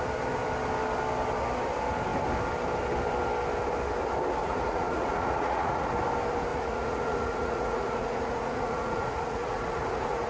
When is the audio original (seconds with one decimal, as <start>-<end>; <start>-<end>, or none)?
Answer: 0.0-4.4; 5.9-6.5